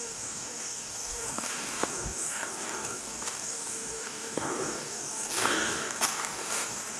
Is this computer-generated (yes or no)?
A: yes